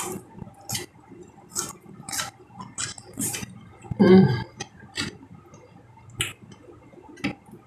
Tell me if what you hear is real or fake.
real